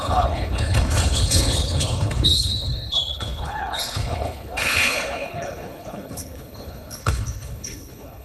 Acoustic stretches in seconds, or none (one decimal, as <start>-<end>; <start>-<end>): none